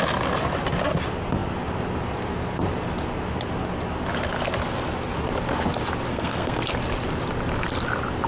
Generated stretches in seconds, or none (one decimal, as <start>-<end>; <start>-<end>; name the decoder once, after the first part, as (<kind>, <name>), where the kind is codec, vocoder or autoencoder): 6.1-6.6 (codec, SNAC)